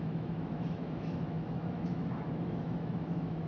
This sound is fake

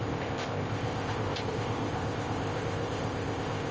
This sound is fake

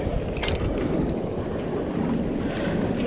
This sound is real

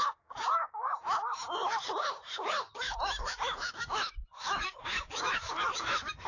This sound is fake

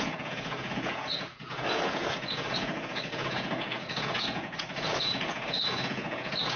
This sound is fake